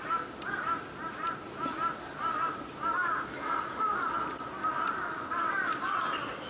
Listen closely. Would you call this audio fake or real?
real